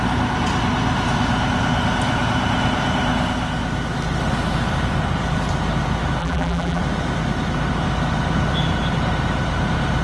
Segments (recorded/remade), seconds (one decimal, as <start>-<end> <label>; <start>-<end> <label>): 0.0-6.2 recorded; 6.2-6.8 remade; 6.8-10.0 recorded